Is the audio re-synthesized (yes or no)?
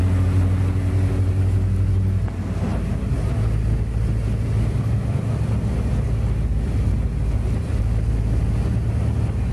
no